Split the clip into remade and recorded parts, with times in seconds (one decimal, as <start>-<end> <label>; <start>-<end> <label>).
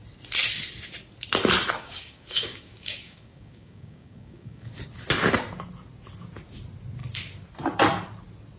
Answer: 0.0-1.8 recorded; 1.8-4.8 remade; 4.8-8.6 recorded